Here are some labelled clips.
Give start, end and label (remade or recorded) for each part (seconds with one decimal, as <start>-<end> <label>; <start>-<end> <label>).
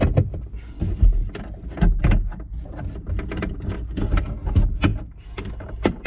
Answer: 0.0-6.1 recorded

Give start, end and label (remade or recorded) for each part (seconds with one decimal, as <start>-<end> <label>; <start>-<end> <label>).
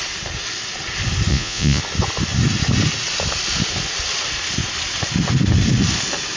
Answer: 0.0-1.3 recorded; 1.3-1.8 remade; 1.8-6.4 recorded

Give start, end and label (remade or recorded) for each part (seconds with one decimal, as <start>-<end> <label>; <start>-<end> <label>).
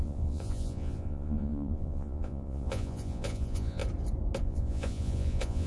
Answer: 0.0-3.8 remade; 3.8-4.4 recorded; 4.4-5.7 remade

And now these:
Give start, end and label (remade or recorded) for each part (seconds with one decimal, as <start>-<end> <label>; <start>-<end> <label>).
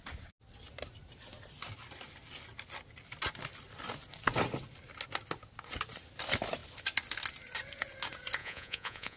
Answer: 0.0-8.4 recorded; 8.4-9.2 remade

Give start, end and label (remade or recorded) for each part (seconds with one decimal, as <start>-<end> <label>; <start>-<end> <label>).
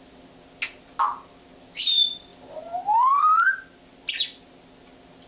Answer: 0.0-5.3 recorded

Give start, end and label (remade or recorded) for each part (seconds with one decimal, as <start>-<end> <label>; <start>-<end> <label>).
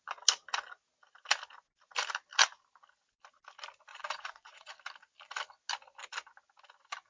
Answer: 0.0-3.9 recorded; 3.9-4.7 remade; 4.7-7.1 recorded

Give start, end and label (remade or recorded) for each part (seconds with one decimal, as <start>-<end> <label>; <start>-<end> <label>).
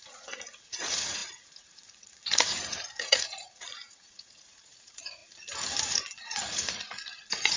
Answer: 0.0-5.2 remade; 5.2-5.8 recorded; 5.8-7.6 remade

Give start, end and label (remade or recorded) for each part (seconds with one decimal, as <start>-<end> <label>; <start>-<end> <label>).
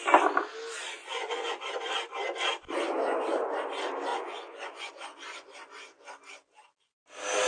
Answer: 0.0-1.0 recorded; 1.0-1.6 remade; 1.6-4.1 recorded; 4.1-4.9 remade; 4.9-7.5 recorded